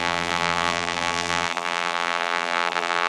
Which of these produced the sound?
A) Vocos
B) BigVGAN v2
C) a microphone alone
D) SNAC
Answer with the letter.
B